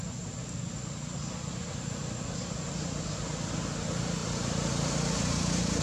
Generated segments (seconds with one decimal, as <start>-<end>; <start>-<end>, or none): 4.2-5.8